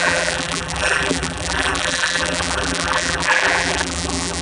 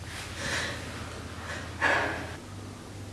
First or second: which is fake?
first